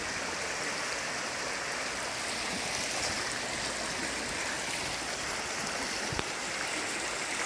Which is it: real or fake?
real